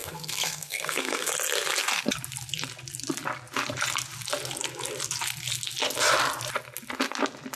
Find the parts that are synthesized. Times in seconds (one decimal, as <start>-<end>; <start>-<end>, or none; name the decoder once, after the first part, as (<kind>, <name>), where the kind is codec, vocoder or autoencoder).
0.0-1.3 (codec, SNAC)